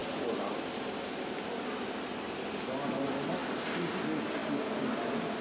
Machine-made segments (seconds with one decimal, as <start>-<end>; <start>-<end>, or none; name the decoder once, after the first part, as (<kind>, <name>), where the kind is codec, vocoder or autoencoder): none

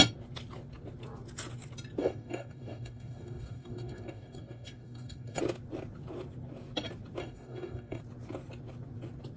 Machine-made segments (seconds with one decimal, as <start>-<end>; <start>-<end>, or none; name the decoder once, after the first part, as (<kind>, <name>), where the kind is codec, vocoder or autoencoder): 2.0-5.4 (codec, DAC); 7.2-8.0

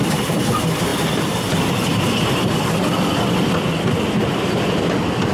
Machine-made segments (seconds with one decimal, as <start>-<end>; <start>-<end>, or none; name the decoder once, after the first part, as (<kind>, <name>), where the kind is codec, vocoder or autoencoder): none

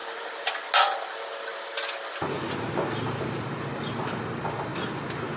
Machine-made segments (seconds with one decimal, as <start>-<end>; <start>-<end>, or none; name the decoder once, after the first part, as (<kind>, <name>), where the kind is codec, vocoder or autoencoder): none

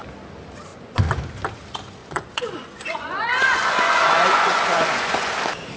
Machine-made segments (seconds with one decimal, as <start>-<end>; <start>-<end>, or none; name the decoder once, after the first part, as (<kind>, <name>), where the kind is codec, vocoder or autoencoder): 0.7-1.3 (vocoder, Vocos); 2.0-5.3

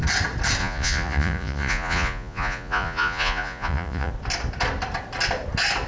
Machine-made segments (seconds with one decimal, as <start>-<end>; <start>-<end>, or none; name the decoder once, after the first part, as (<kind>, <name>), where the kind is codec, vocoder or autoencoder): 0.6-4.1 (vocoder, Vocos)

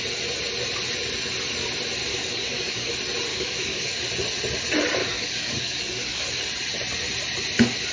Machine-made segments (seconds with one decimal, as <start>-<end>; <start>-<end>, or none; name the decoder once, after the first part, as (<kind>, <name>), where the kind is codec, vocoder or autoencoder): 2.1-2.9 (codec, DAC); 3.3-4.0; 5.0-6.2